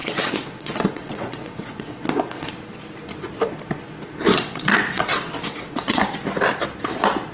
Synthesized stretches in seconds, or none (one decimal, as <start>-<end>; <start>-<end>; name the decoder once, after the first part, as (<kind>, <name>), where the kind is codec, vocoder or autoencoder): 0.0-2.5 (vocoder, WaveNeXt); 4.3-6.0